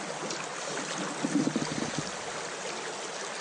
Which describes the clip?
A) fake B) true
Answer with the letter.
B